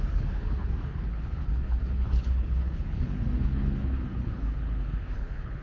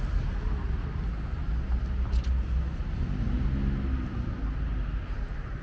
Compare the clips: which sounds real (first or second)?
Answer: second